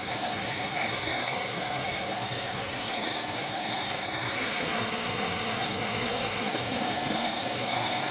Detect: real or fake fake